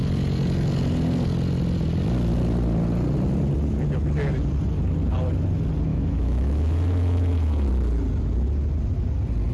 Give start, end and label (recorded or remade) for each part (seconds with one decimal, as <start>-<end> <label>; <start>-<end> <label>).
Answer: 0.0-5.9 recorded; 5.9-7.7 remade; 7.7-9.5 recorded